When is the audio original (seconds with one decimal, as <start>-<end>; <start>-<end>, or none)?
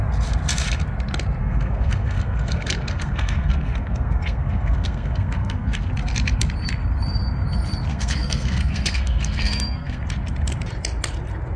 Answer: 0.0-1.4; 5.9-7.9; 10.0-11.6